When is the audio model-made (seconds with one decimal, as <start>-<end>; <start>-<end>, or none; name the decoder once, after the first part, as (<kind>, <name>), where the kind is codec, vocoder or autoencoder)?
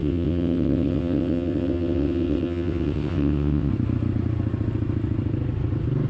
0.0-3.7 (vocoder, WaveNeXt)